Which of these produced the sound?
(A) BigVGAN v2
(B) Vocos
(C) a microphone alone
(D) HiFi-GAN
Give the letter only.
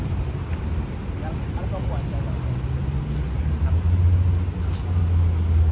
C